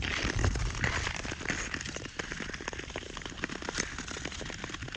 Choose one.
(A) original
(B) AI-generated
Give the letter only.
A